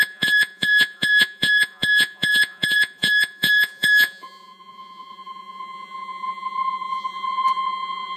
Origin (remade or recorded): remade